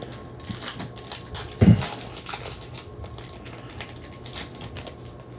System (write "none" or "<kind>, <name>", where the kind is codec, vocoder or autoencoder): none